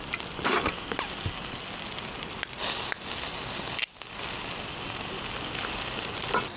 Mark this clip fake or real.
real